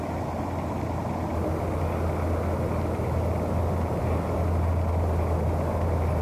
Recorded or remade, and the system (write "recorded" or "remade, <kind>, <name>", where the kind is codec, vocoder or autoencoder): recorded